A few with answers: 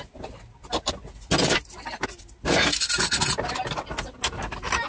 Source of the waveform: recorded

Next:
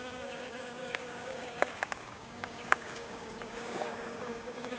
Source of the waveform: remade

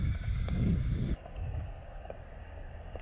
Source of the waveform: remade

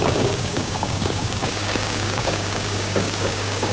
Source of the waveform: remade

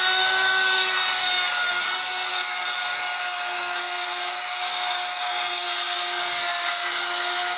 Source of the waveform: remade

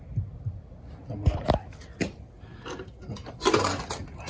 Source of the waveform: recorded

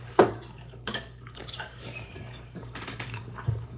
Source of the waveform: remade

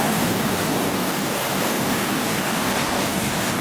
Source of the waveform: remade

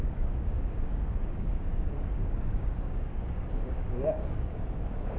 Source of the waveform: remade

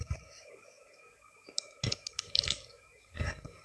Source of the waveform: remade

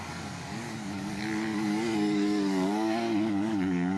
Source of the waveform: remade